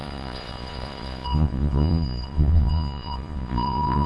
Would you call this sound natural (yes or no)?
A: no